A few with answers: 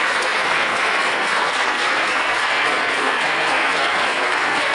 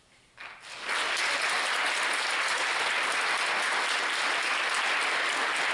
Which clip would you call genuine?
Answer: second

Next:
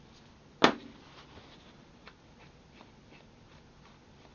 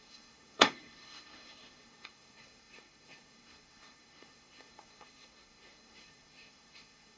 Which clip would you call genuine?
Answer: first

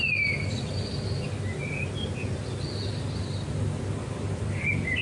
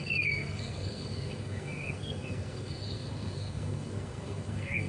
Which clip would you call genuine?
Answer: first